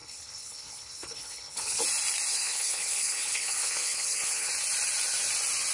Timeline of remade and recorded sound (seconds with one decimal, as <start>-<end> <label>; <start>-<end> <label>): 0.0-1.8 remade; 1.8-2.3 recorded; 2.3-4.5 remade; 4.5-5.7 recorded